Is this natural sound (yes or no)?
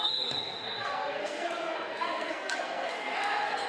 no